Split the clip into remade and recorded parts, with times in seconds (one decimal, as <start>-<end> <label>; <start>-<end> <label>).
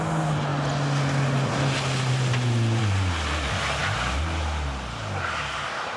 0.0-6.0 recorded